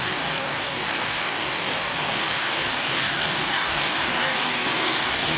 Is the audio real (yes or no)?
no